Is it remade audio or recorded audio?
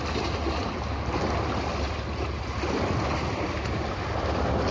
recorded